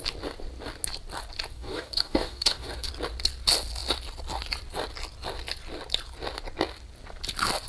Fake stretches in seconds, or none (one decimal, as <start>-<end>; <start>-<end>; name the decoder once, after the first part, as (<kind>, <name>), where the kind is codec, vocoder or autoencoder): 1.5-2.9 (codec, DAC)